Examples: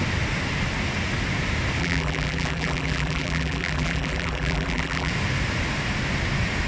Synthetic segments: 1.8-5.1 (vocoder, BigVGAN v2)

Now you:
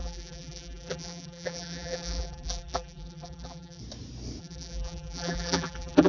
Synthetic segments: 0.0-3.8 (vocoder, BigVGAN v2); 4.4-6.1

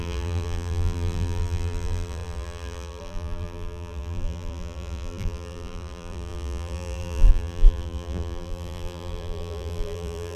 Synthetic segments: 0.0-10.4 (vocoder, BigVGAN v2)